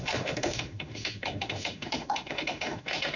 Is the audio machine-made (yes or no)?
yes